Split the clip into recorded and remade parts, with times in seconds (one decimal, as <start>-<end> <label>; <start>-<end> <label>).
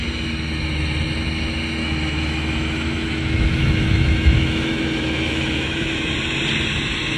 0.0-1.8 recorded; 1.8-6.1 remade; 6.1-7.2 recorded